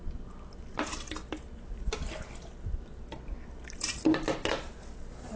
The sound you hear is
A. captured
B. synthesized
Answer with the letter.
A